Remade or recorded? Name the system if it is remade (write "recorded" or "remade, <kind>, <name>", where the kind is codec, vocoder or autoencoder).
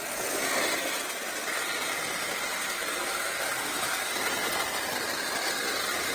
recorded